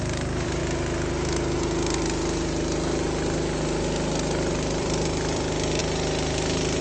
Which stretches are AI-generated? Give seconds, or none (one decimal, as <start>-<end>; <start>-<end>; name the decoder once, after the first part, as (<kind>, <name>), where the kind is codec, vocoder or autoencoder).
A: 0.0-0.6 (vocoder, BigVGAN v2); 4.5-5.8

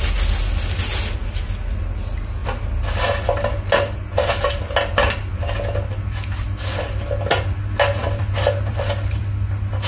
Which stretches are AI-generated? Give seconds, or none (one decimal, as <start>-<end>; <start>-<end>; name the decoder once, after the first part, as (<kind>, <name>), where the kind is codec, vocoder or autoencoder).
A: 8.0-9.2 (vocoder, BigVGAN v2)

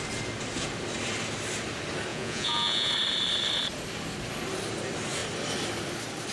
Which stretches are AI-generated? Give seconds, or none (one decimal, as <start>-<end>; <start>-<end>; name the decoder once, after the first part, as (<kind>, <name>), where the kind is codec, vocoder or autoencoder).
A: 2.1-2.9 (vocoder, Vocos)

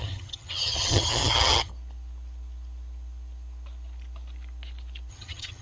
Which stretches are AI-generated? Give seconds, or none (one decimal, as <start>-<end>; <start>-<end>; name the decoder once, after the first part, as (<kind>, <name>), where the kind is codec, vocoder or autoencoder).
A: 0.0-1.7 (vocoder, HiFi-GAN); 5.1-5.6

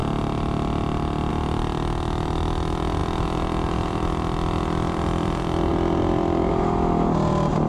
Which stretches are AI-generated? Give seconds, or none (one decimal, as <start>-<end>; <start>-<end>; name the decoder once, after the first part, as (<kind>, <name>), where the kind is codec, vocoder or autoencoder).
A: 3.0-5.7 (vocoder, BigVGAN v2)